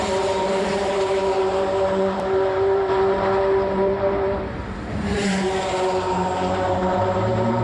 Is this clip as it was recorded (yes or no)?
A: no